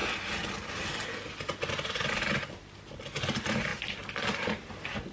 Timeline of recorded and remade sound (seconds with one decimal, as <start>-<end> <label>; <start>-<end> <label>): 0.0-5.1 recorded